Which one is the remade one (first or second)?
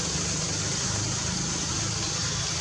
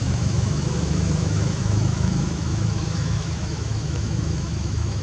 second